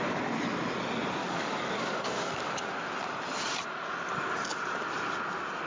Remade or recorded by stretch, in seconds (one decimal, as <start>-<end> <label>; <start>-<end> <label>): 0.0-1.2 recorded; 1.2-2.7 remade; 2.7-5.7 recorded